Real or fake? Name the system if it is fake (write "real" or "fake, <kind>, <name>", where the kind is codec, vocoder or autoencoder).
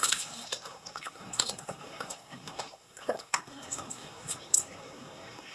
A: fake, codec, SNAC